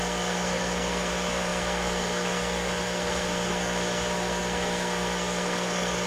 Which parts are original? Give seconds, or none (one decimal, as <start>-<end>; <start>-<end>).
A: none